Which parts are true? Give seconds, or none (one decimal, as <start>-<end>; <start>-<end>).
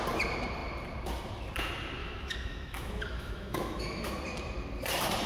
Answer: 0.0-2.0; 4.1-5.3